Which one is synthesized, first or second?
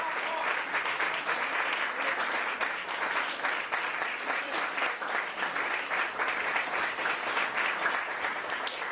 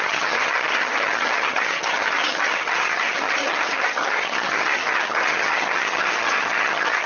second